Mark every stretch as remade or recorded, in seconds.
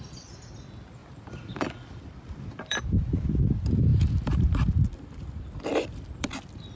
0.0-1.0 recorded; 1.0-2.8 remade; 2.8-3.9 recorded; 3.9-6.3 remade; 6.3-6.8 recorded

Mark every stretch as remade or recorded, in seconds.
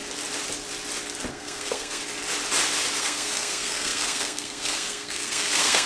0.0-1.3 recorded; 1.3-2.0 remade; 2.0-3.0 recorded; 3.0-5.9 remade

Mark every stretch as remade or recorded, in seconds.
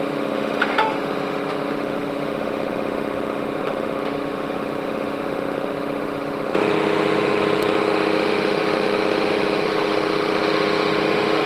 0.0-11.5 remade